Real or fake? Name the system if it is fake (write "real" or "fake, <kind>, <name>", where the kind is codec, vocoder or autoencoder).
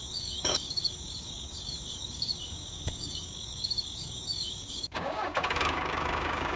fake, codec, DAC